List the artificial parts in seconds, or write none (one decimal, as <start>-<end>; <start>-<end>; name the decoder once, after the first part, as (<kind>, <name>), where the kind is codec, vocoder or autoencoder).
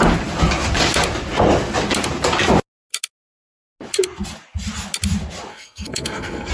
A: 5.5-6.5 (codec, SNAC)